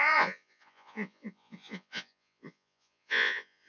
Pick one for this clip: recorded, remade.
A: remade